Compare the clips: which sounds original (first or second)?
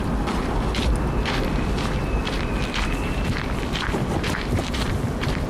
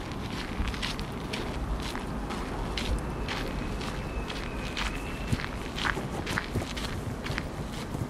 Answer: second